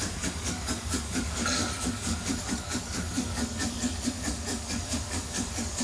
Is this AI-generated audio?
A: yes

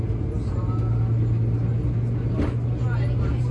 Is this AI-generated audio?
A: no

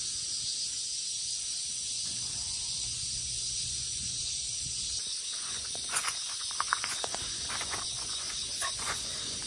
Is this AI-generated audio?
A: yes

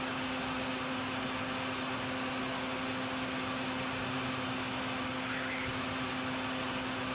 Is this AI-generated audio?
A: no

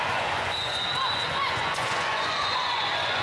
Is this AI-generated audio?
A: yes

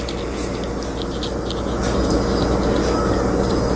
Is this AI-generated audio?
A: no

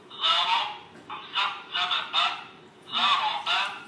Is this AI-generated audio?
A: yes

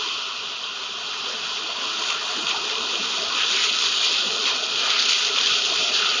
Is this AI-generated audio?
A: no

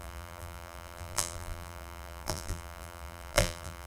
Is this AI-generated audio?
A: yes